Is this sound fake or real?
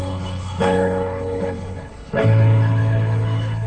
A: fake